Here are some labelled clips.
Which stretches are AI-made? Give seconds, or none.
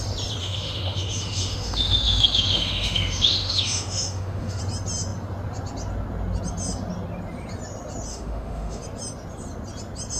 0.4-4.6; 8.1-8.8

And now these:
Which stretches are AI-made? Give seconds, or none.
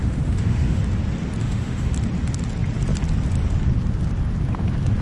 0.0-0.8; 1.4-1.9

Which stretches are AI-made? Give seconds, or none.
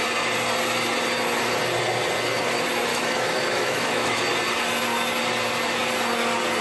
2.9-4.2